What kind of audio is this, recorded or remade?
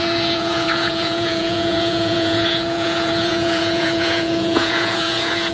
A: remade